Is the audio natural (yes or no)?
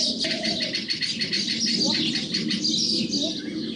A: yes